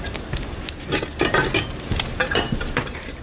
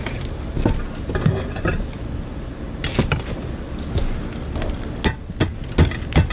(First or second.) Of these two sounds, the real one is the second